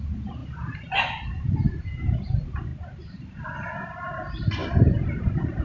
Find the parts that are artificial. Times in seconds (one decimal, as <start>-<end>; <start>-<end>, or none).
0.0-0.4; 1.0-5.6